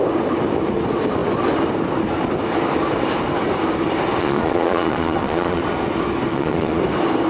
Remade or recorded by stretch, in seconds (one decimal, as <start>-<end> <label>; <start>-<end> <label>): 0.0-4.2 recorded; 4.2-5.6 remade; 5.6-6.3 recorded; 6.3-6.8 remade; 6.8-7.3 recorded